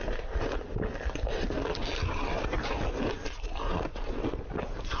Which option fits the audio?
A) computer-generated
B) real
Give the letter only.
B